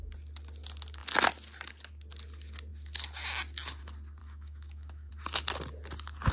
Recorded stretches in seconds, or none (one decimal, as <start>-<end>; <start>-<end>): 0.0-4.2; 5.1-6.3